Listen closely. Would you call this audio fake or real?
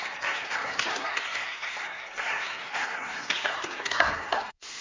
fake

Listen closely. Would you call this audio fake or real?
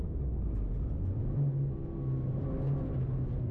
real